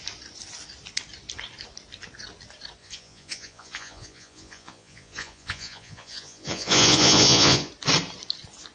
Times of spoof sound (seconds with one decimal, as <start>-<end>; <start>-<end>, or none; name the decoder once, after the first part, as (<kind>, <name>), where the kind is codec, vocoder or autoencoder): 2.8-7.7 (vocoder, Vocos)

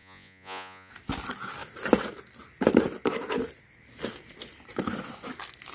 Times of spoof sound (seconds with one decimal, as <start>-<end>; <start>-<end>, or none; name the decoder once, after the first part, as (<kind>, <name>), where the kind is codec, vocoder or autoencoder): 0.0-0.9 (vocoder, Vocos)

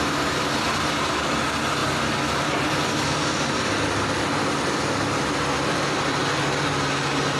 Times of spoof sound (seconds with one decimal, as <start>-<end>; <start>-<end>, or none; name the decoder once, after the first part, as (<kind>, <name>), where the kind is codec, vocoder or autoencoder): none